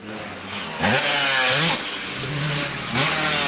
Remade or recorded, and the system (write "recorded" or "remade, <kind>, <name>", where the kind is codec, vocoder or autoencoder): recorded